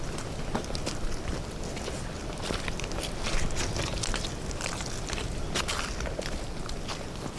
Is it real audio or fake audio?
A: real